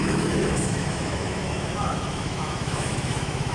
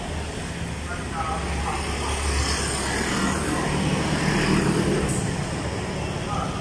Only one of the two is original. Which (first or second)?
second